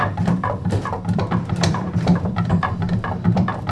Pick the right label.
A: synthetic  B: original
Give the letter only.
A